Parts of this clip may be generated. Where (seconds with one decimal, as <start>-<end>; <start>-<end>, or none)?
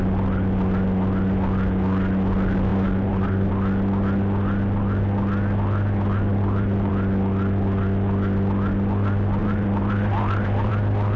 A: 2.7-3.5; 6.3-6.9; 9.4-10.7